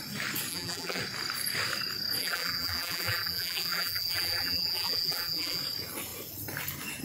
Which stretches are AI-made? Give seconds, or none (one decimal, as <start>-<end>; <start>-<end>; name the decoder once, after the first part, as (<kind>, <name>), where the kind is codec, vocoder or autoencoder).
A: 0.5-1.0 (vocoder, BigVGAN v2); 2.2-5.6